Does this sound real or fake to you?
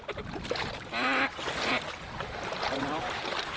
real